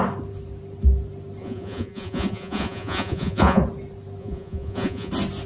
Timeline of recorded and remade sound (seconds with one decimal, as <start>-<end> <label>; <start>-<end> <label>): 0.0-1.4 recorded; 1.4-3.6 remade; 3.6-4.2 recorded; 4.2-5.1 remade; 5.1-5.5 recorded